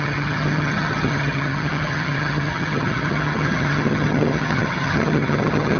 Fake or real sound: fake